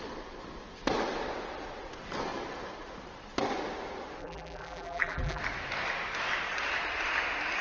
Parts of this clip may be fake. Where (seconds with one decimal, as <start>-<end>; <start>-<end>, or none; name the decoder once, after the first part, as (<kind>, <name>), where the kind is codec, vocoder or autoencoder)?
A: 4.2-5.4 (vocoder, BigVGAN v2)